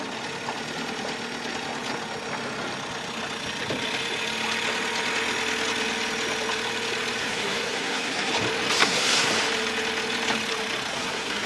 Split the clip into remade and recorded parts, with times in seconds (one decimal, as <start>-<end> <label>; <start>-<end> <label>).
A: 0.0-7.2 recorded; 7.2-8.3 remade; 8.3-8.8 recorded; 8.8-9.3 remade; 9.3-10.9 recorded; 10.9-11.5 remade